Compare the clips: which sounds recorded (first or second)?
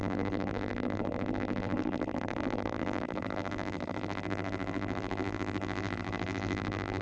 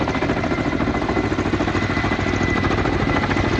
second